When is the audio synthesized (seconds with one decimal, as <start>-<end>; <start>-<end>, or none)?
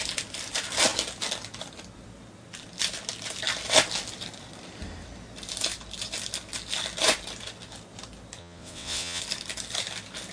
8.4-9.2